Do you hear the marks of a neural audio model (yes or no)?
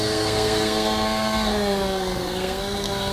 yes